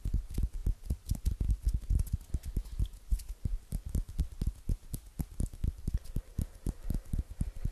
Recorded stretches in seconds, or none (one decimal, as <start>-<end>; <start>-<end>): 0.0-3.1; 4.2-5.6; 6.2-7.7